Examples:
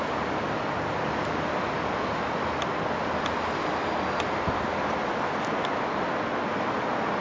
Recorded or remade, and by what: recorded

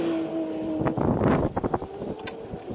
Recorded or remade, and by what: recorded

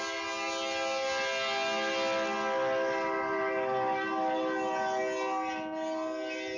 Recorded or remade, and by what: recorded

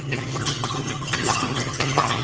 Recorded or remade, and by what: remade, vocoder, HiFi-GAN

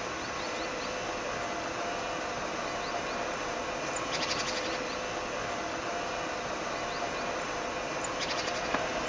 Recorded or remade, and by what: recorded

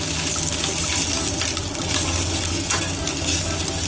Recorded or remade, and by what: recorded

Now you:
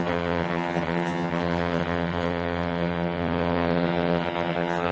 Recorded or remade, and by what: remade, vocoder, HiFi-GAN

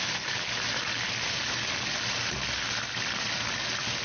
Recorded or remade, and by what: recorded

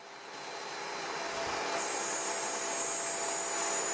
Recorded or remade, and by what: recorded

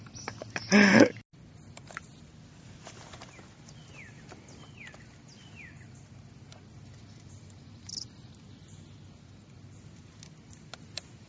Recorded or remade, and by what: recorded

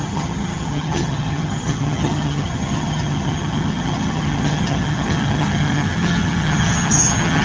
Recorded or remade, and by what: remade, vocoder, HiFi-GAN